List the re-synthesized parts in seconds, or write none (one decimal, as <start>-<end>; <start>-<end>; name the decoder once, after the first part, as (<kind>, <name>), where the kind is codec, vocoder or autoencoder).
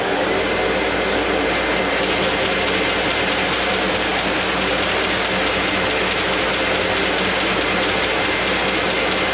none